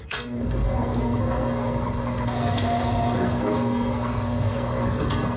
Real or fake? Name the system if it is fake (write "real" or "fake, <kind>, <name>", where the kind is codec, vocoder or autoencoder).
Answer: fake, codec, SNAC